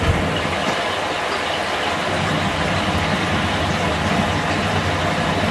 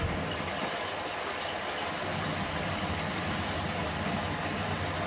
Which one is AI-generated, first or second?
second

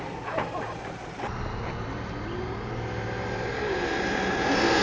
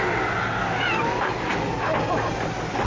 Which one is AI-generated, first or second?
first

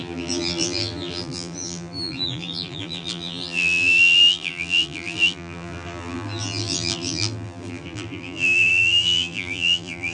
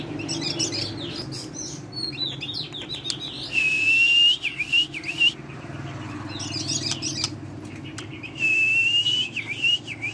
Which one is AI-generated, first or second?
first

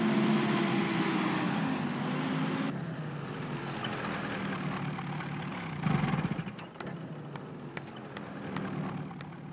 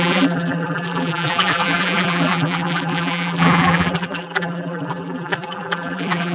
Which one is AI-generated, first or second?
second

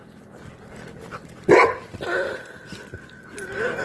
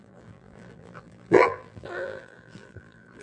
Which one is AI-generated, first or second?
second